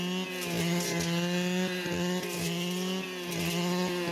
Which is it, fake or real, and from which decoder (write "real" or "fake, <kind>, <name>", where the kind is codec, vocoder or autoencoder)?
real